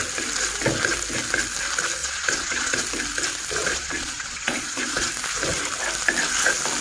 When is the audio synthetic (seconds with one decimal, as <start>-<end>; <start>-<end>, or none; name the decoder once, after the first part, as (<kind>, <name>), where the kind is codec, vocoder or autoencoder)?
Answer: 2.0-2.8 (vocoder, Vocos); 3.6-5.1